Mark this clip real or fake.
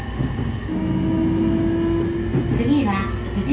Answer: real